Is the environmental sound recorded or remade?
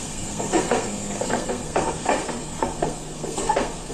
remade